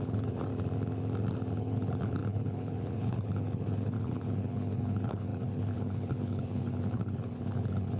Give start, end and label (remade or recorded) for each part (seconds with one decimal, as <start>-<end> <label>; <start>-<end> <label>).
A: 0.0-0.5 remade; 0.5-1.6 recorded; 1.6-8.0 remade